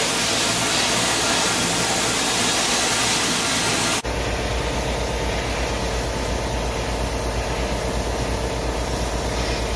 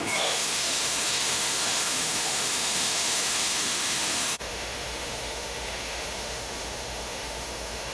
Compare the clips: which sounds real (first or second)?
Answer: first